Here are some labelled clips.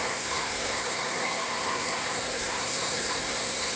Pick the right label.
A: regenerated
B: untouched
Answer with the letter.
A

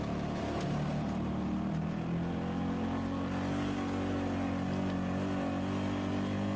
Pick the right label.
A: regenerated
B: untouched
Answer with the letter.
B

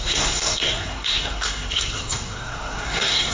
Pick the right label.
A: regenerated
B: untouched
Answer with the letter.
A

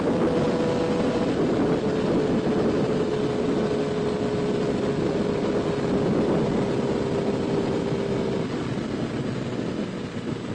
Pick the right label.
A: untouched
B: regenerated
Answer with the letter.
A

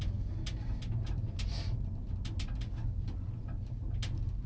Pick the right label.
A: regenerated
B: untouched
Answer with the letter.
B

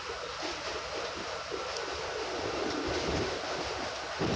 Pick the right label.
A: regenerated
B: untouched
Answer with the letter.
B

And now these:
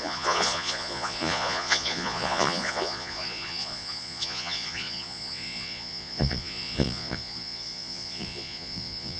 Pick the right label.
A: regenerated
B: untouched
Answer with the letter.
A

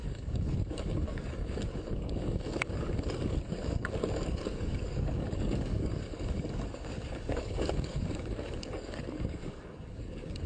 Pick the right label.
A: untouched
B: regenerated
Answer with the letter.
B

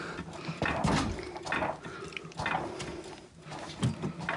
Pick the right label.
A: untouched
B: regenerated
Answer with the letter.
A